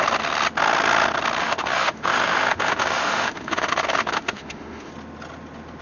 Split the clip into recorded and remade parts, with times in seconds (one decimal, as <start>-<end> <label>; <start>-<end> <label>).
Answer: 0.0-1.4 recorded; 1.4-4.9 remade; 4.9-5.8 recorded